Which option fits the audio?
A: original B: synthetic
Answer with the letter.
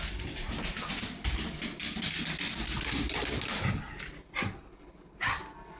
A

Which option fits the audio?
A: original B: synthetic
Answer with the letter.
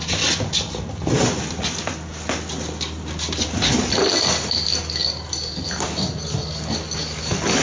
A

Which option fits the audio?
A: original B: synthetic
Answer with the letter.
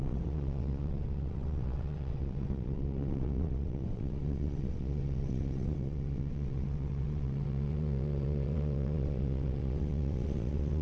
B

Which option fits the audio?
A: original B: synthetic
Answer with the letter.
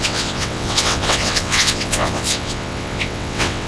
B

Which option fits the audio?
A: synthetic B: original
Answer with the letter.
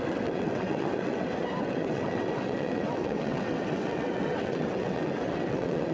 A